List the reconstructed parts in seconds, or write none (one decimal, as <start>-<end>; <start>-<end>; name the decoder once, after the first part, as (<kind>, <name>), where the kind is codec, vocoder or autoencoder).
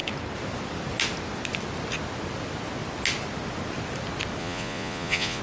4.4-5.4 (vocoder, Vocos)